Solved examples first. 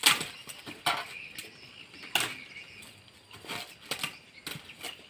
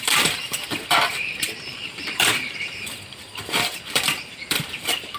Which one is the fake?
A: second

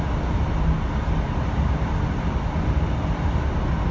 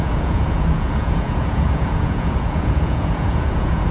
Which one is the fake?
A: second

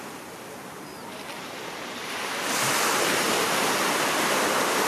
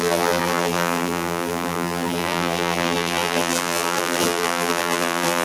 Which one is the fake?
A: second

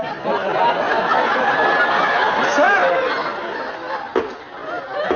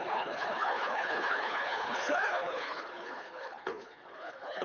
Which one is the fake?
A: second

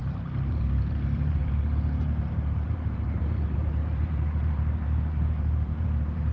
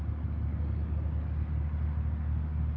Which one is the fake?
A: first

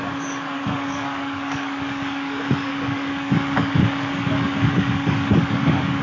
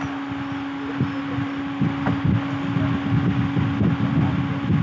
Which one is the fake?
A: first